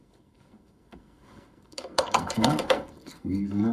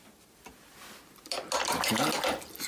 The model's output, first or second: first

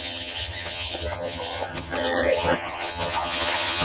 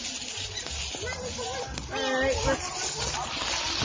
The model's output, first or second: first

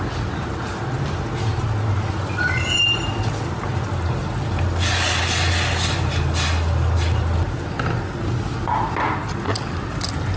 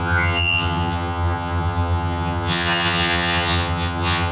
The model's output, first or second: second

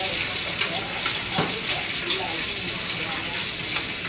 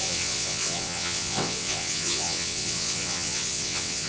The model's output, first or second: second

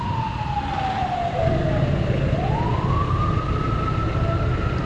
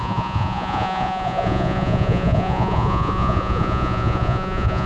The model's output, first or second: second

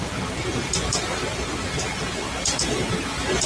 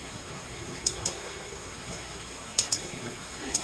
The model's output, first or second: second